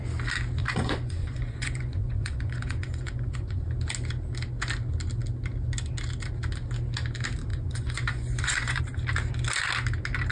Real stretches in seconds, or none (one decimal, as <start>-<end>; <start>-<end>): 0.0-0.6; 3.6-7.5; 8.8-10.3